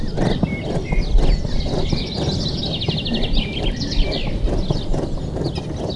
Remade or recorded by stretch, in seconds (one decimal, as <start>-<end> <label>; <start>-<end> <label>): 0.0-6.0 recorded

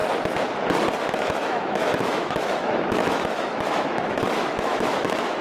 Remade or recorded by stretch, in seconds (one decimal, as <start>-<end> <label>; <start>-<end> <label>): 0.0-1.1 recorded; 1.1-5.4 remade